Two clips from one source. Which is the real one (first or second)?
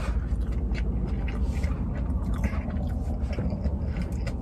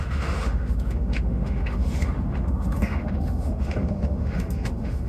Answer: first